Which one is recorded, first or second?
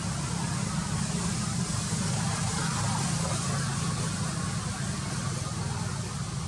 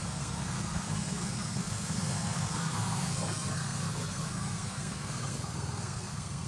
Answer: first